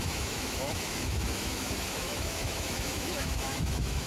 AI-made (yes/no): yes